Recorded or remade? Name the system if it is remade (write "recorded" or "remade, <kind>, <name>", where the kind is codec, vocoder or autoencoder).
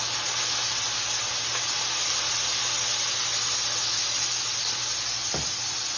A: recorded